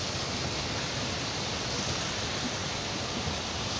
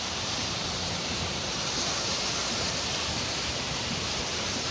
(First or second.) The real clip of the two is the first